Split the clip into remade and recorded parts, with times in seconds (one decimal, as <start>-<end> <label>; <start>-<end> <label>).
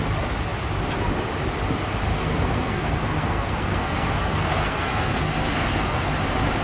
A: 0.0-2.1 recorded; 2.1-6.1 remade; 6.1-6.6 recorded